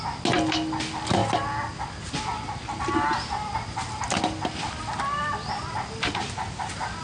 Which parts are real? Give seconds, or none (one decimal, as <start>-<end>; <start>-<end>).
0.0-7.0